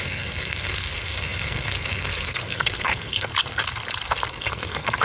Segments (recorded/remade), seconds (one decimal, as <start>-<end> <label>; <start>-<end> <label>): 0.0-3.3 remade; 3.3-4.3 recorded; 4.3-5.0 remade